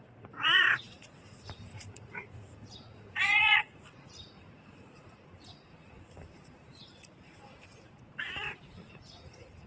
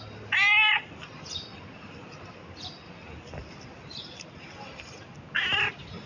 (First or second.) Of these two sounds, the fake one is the first